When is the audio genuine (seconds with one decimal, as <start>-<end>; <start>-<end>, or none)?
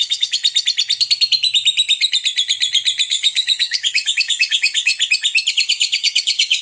0.4-3.1; 4.9-5.5